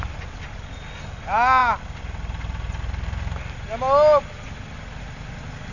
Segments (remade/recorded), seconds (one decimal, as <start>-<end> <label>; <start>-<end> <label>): 0.0-5.7 recorded

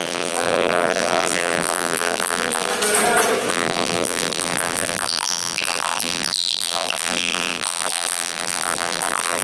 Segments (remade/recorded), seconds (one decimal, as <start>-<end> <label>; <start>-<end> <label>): 0.0-2.7 remade; 2.7-3.5 recorded; 3.5-9.4 remade

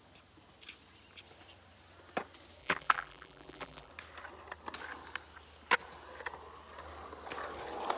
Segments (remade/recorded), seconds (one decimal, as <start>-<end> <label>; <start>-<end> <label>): 0.0-2.6 recorded; 2.6-3.9 remade; 3.9-8.0 recorded